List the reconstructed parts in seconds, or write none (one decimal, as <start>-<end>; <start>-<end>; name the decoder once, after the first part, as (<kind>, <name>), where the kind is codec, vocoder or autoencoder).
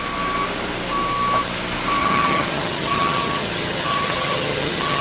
2.0-5.0 (vocoder, HiFi-GAN)